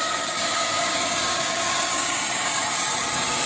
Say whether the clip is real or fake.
fake